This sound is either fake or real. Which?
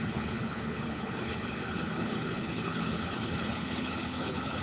fake